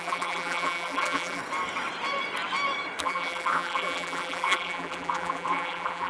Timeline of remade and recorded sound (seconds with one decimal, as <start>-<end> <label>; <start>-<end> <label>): 0.0-1.4 remade; 1.4-3.0 recorded; 3.0-6.1 remade